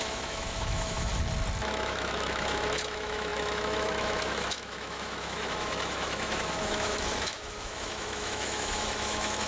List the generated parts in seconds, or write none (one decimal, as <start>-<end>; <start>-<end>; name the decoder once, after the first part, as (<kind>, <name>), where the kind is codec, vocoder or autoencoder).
0.0-1.1 (autoencoder, DAC-VAE); 1.6-9.5